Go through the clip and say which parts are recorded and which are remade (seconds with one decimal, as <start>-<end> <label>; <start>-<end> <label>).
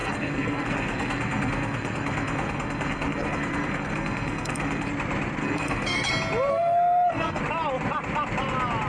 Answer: 0.0-4.9 remade; 4.9-5.4 recorded; 5.4-6.1 remade; 6.1-6.5 recorded; 6.5-7.4 remade; 7.4-8.9 recorded